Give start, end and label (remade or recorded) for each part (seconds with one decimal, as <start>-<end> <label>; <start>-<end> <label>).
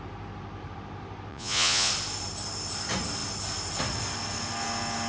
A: 0.0-1.3 recorded; 1.3-1.9 remade; 1.9-5.1 recorded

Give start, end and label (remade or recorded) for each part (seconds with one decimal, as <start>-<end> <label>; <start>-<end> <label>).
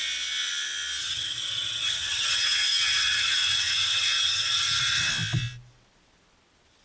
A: 0.0-1.0 recorded; 1.0-5.1 remade; 5.1-6.8 recorded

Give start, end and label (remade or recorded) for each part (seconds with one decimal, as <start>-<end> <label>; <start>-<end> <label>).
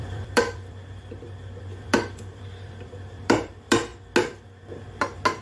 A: 0.0-3.9 remade; 3.9-5.4 recorded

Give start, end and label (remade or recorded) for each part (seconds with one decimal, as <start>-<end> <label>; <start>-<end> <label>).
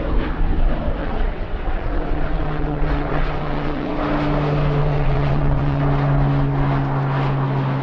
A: 0.0-1.0 recorded; 1.0-4.0 remade; 4.0-4.8 recorded; 4.8-5.8 remade; 5.8-7.8 recorded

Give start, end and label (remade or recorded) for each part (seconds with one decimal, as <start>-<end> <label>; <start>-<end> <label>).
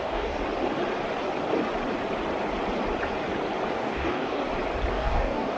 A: 0.0-0.4 remade; 0.4-3.8 recorded; 3.8-4.4 remade; 4.4-4.9 recorded; 4.9-5.6 remade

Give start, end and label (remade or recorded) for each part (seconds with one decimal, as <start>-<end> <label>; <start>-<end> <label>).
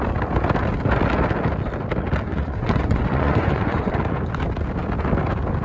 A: 0.0-2.3 recorded; 2.3-3.9 remade; 3.9-5.6 recorded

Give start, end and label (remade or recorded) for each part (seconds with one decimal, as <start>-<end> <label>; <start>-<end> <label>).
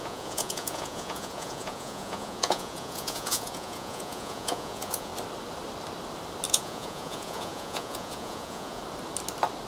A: 0.0-5.1 remade; 5.1-6.5 recorded; 6.5-8.8 remade; 8.8-9.7 recorded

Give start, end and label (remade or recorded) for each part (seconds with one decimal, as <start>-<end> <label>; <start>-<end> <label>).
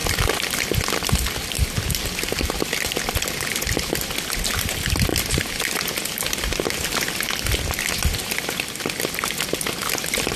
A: 0.0-10.4 recorded